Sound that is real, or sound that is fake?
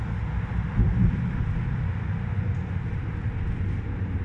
real